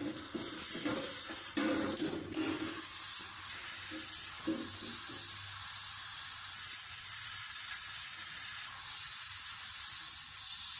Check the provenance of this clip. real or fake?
real